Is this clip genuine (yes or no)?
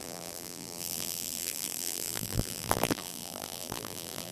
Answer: no